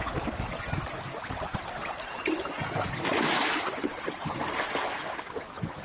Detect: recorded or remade recorded